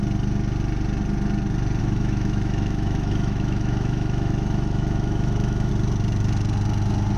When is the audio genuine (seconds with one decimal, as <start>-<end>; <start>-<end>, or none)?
0.0-1.8; 5.7-7.2